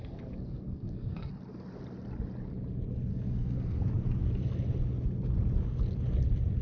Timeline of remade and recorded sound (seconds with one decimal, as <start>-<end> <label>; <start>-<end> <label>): 0.0-1.3 remade; 1.3-3.1 recorded; 3.1-3.8 remade; 3.8-6.6 recorded